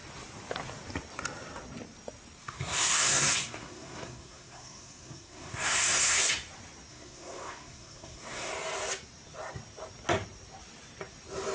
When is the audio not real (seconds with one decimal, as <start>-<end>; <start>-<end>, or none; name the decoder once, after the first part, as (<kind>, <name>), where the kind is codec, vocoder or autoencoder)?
2.4-6.3 (codec, SNAC); 6.9-8.5